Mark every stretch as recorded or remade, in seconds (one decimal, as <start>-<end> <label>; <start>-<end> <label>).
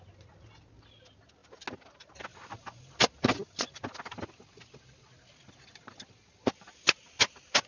0.0-7.7 recorded